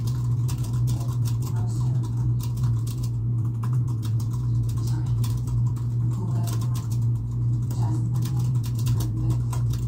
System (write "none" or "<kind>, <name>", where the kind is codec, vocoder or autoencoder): vocoder, Vocos